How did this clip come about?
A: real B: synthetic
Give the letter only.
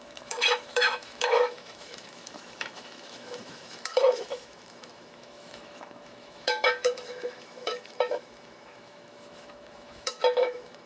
B